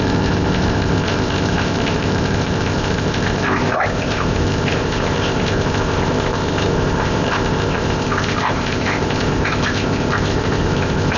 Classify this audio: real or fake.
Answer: fake